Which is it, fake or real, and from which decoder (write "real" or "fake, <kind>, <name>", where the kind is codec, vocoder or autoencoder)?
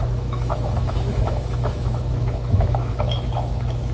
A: fake, autoencoder, DAC-VAE